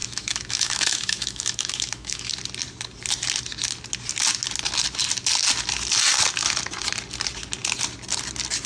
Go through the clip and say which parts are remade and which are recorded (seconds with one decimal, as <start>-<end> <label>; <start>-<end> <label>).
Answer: 0.0-2.3 remade; 2.3-8.7 recorded